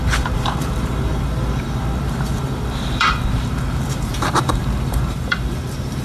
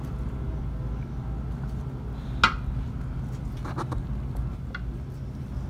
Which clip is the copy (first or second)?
first